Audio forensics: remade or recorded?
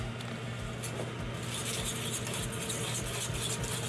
recorded